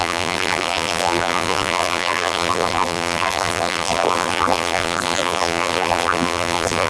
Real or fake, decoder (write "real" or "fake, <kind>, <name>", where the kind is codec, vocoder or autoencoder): fake, vocoder, BigVGAN v2